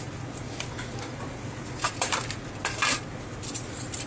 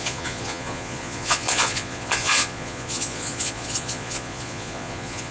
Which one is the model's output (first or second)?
second